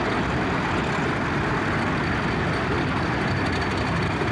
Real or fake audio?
real